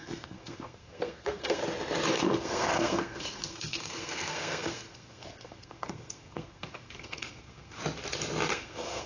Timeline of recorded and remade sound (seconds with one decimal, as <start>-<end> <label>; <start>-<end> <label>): 0.0-1.6 remade; 1.6-2.1 recorded; 2.1-7.8 remade; 7.8-8.5 recorded; 8.5-9.1 remade